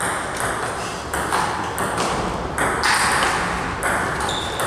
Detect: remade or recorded recorded